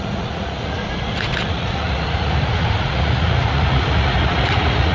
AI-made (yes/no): yes